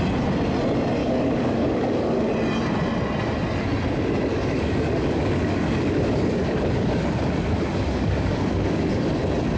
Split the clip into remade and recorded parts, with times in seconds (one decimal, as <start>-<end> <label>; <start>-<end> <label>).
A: 0.0-1.0 recorded; 1.0-2.3 remade; 2.3-4.3 recorded; 4.3-9.2 remade; 9.2-9.6 recorded

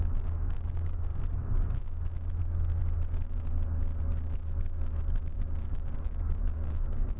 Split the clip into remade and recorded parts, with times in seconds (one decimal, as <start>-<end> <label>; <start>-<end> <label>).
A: 0.0-1.1 remade; 1.1-2.4 recorded; 2.4-2.8 remade; 2.8-5.7 recorded; 5.7-7.2 remade

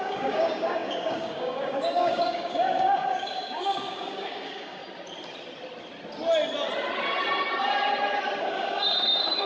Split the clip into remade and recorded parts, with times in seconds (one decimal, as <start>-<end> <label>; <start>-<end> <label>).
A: 0.0-4.8 remade; 4.8-8.4 recorded; 8.4-9.5 remade

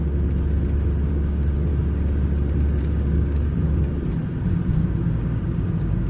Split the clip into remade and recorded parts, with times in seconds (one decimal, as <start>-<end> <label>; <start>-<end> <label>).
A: 0.0-1.1 recorded; 1.1-1.7 remade; 1.7-2.8 recorded; 2.8-3.9 remade; 3.9-5.0 recorded; 5.0-6.1 remade

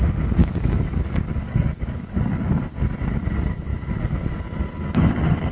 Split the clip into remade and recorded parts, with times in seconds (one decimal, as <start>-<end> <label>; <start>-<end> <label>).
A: 0.0-0.4 recorded; 0.4-2.6 remade; 2.6-5.5 recorded